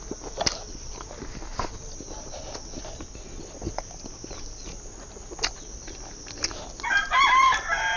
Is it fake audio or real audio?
real